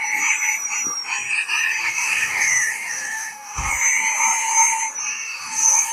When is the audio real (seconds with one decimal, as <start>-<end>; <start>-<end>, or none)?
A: 0.0-1.8; 3.7-5.0